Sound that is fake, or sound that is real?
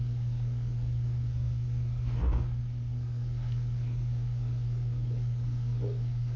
fake